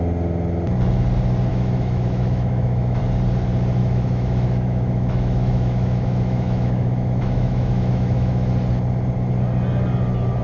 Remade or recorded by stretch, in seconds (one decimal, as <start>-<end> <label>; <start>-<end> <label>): 0.0-1.5 recorded; 1.5-3.0 remade; 3.0-3.8 recorded; 3.8-8.5 remade; 8.5-10.4 recorded